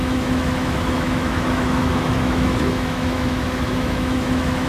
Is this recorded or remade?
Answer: remade